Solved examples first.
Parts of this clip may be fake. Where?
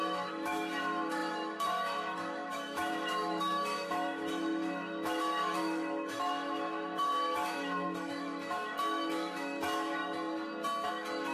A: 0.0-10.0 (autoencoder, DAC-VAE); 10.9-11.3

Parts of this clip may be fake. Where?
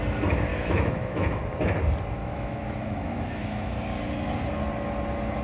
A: 0.5-1.4 (autoencoder, DAC-VAE); 2.2-3.7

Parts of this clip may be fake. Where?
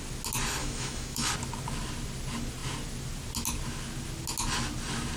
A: 0.6-1.3 (autoencoder, DAC-VAE)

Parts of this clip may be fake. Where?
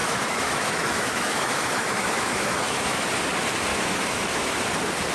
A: 0.0-3.1 (autoencoder, DAC-VAE); 3.7-4.6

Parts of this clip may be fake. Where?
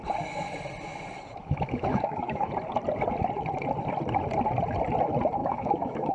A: 1.4-2.5 (autoencoder, DAC-VAE); 5.4-6.1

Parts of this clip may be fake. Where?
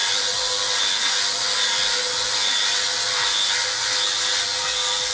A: none